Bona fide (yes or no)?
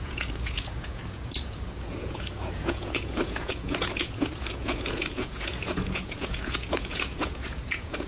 no